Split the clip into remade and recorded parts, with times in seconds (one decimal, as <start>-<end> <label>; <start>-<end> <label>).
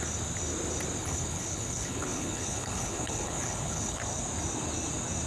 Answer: 0.0-1.0 recorded; 1.0-4.0 remade; 4.0-5.3 recorded